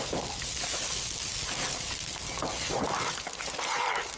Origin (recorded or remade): recorded